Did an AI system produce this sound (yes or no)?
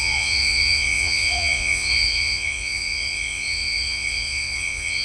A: yes